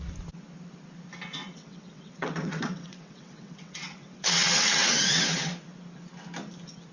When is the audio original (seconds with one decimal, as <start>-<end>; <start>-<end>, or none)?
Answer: 0.0-1.4; 5.5-6.9